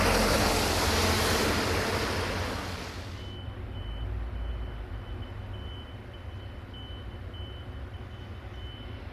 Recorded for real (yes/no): yes